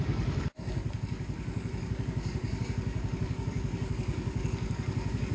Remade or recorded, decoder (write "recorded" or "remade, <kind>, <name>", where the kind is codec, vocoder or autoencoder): remade, codec, DAC